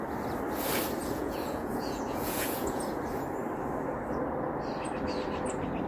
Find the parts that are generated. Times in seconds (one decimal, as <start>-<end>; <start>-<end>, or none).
1.0-3.0